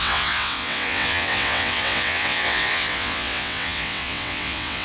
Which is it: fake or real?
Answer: fake